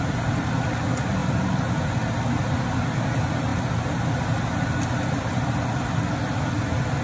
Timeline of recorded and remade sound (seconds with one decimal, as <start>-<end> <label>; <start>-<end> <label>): 0.0-7.0 recorded